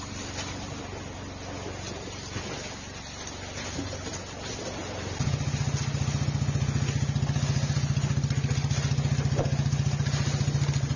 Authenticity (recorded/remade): recorded